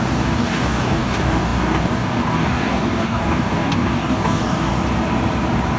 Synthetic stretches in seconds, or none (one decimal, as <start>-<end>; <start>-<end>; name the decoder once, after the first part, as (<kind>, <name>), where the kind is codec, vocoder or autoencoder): 0.0-4.7 (codec, DAC)